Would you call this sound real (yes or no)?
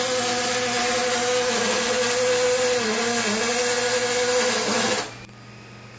yes